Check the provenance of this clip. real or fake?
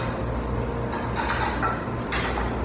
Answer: real